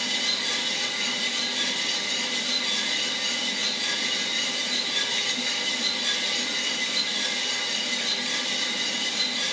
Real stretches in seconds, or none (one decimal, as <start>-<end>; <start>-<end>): 0.0-3.6; 4.8-7.1; 7.8-9.5